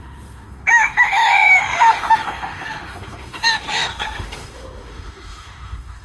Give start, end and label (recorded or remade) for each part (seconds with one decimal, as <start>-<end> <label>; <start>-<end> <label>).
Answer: 0.0-6.0 remade